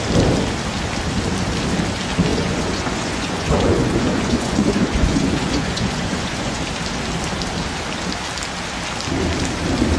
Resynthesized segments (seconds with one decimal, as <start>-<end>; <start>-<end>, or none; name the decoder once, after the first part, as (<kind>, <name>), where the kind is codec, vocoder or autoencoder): 2.3-6.6 (vocoder, Vocos)